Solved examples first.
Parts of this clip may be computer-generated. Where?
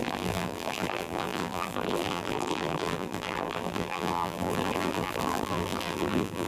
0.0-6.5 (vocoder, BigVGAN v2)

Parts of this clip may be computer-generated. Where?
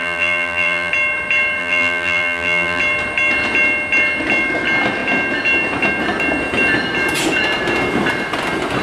0.0-0.9 (vocoder, BigVGAN v2); 1.6-2.8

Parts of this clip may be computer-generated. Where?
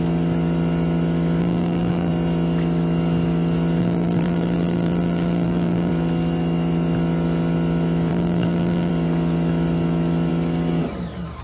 1.4-2.1 (vocoder, BigVGAN v2); 3.8-5.9; 8.1-8.9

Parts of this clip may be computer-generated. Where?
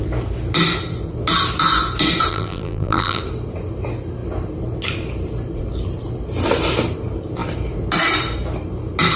2.3-3.2 (vocoder, BigVGAN v2)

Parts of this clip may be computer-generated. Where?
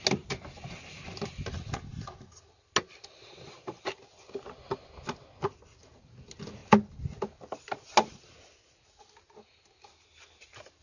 3.2-3.9 (vocoder, BigVGAN v2)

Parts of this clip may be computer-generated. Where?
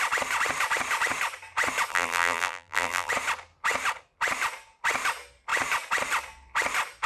1.9-3.1 (vocoder, BigVGAN v2)